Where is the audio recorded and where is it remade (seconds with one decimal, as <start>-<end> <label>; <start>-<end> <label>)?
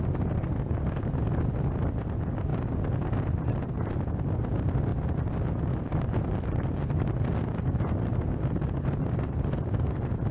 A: 0.0-4.9 recorded; 4.9-9.9 remade; 9.9-10.3 recorded